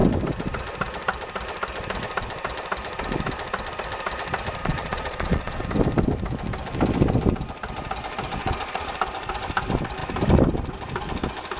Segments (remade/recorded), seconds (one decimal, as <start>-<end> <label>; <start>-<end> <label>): 0.0-4.6 recorded; 4.6-5.6 remade; 5.6-8.4 recorded; 8.4-8.9 remade; 8.9-11.6 recorded